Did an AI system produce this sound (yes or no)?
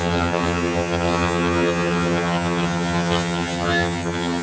yes